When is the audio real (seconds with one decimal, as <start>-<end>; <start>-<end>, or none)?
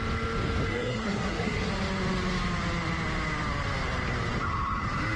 0.0-0.7; 1.7-5.2